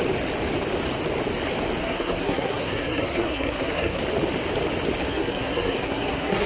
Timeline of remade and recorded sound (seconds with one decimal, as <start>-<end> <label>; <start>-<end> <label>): 0.0-1.8 recorded; 1.8-4.0 remade; 4.0-5.1 recorded; 5.1-6.5 remade